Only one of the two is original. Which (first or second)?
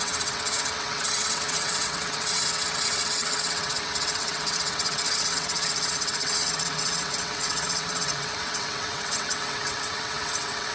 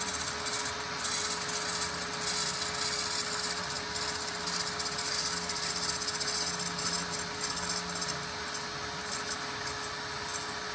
second